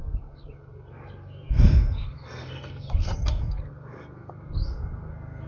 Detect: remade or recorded remade